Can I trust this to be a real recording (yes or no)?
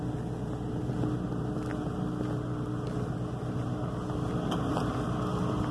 yes